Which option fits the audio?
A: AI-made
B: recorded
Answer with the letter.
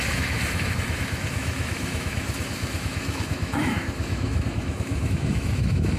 A